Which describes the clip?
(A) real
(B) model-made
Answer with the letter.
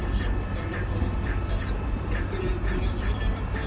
A